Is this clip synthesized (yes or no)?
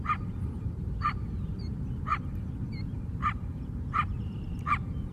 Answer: yes